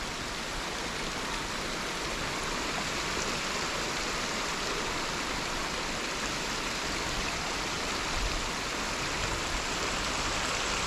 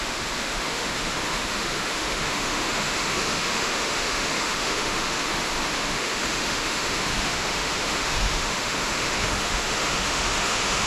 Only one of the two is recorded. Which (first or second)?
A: first